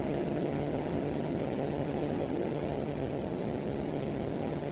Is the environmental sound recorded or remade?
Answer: remade